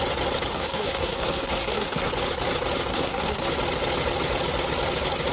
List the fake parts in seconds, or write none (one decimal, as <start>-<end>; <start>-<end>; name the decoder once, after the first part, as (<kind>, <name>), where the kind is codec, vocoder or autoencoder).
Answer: 0.5-2.1 (codec, SNAC); 2.9-3.5